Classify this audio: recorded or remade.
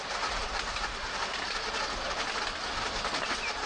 recorded